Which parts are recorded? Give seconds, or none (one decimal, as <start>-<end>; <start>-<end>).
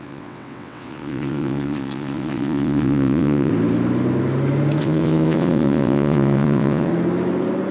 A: 3.5-4.8; 6.9-7.7